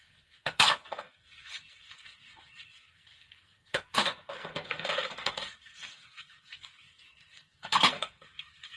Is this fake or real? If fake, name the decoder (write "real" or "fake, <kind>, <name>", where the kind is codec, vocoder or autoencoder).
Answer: fake, codec, SNAC